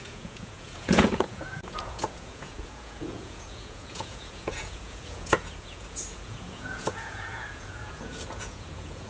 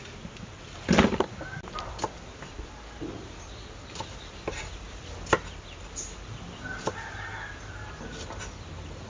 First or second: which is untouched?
second